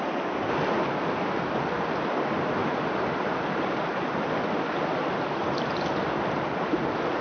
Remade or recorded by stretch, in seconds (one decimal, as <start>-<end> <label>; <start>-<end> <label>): 0.0-2.6 recorded; 2.6-4.2 remade; 4.2-7.2 recorded